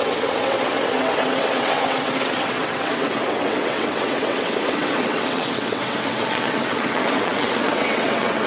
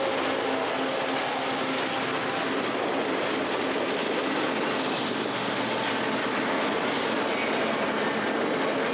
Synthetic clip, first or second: first